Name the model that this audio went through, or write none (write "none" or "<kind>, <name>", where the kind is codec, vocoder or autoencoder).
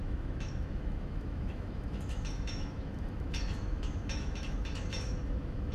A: autoencoder, DAC-VAE